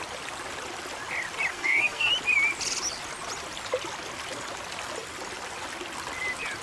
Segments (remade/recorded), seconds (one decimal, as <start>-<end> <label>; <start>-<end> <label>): 0.0-1.5 recorded; 1.5-2.1 remade; 2.1-6.6 recorded